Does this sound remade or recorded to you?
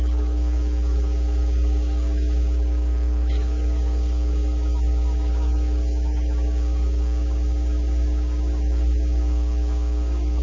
remade